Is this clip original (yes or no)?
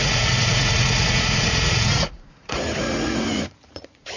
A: no